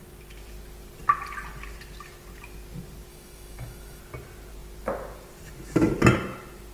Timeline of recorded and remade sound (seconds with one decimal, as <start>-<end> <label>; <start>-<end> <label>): 0.0-3.1 recorded; 3.1-4.0 remade; 4.0-6.7 recorded

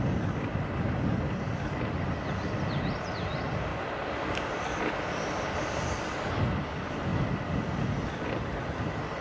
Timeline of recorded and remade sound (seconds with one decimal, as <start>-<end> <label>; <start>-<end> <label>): 0.0-9.2 recorded